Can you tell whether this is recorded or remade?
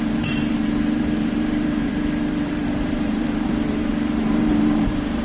remade